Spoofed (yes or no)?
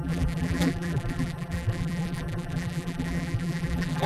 yes